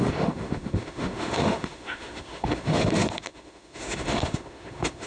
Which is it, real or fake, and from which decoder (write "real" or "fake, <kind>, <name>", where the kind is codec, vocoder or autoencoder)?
fake, autoencoder, DAC-VAE